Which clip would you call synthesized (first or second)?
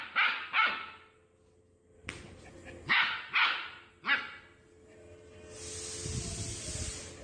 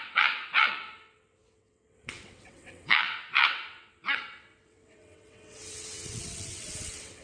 second